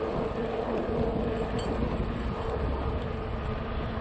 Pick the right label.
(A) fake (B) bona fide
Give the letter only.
B